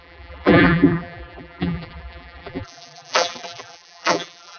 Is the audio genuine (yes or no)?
no